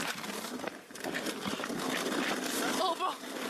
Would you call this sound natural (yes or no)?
yes